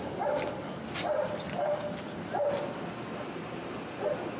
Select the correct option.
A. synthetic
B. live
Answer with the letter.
B